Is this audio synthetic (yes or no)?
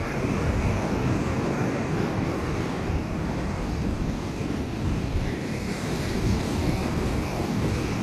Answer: yes